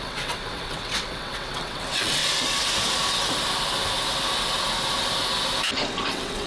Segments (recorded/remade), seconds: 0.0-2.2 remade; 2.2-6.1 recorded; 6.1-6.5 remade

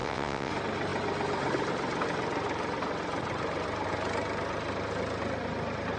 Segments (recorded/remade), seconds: 0.0-0.5 remade; 0.5-6.0 recorded

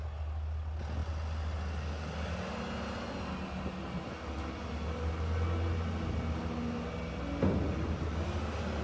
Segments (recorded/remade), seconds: 0.0-8.8 recorded

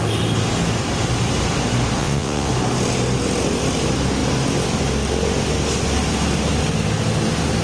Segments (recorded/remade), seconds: 0.0-2.0 recorded; 2.0-2.5 remade; 2.5-7.6 recorded

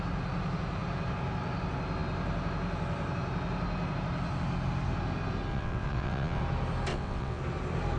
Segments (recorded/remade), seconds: 0.0-5.5 recorded; 5.5-6.4 remade; 6.4-6.9 recorded; 6.9-7.4 remade; 7.4-8.0 recorded

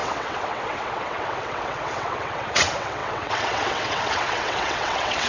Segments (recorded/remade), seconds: 0.0-5.3 remade

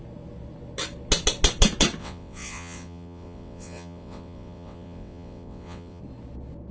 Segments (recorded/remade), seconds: 0.0-2.0 recorded; 2.0-6.0 remade; 6.0-6.7 recorded